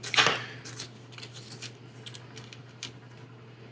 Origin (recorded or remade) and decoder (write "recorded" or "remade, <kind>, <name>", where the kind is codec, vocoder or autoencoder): recorded